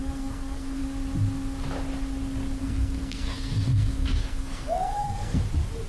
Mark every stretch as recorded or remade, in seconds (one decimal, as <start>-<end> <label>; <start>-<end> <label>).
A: 0.0-0.8 remade; 0.8-2.6 recorded; 2.6-5.4 remade; 5.4-5.9 recorded